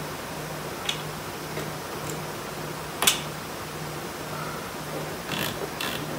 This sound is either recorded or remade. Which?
recorded